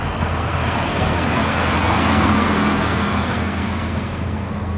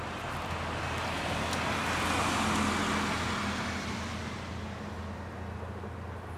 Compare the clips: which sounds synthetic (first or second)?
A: first